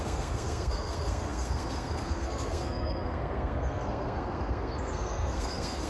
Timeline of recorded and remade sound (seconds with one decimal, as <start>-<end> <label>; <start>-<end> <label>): 0.0-5.9 remade